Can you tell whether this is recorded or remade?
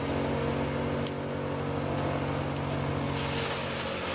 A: recorded